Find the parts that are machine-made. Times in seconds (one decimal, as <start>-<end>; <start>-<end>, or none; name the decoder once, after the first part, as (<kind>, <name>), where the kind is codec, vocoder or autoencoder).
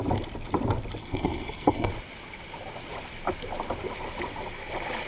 1.0-1.9 (codec, SNAC)